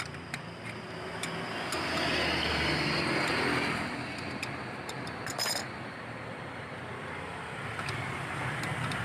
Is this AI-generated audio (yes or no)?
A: no